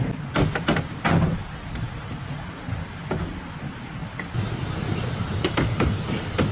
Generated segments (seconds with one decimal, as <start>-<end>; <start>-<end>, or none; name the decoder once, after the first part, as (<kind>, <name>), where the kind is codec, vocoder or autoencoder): 1.6-2.6 (vocoder, Vocos)